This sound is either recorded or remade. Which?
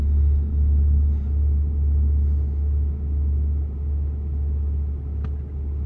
recorded